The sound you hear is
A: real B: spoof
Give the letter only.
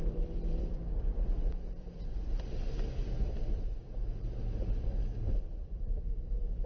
B